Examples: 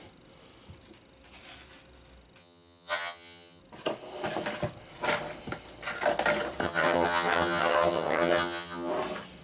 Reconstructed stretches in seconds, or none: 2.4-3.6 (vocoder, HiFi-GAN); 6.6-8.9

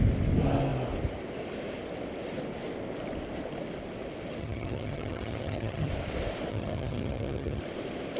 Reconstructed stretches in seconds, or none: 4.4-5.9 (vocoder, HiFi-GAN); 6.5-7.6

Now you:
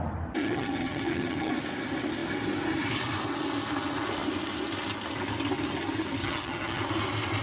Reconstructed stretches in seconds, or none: 0.4-1.5 (vocoder, HiFi-GAN); 6.2-6.8

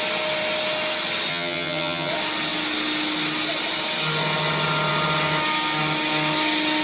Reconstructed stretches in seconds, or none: 1.3-2.1 (vocoder, HiFi-GAN)

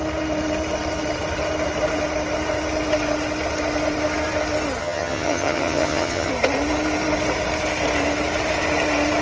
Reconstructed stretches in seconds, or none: 4.8-6.3 (vocoder, HiFi-GAN)

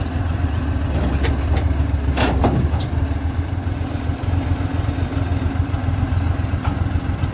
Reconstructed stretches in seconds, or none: none